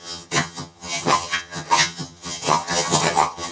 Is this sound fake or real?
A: fake